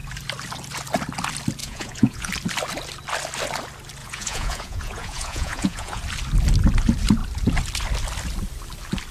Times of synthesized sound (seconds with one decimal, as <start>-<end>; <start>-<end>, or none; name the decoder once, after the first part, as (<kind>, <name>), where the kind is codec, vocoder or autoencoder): 1.6-2.3 (vocoder, Vocos); 4.0-6.0